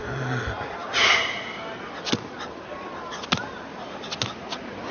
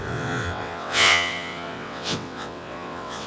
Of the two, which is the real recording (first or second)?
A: first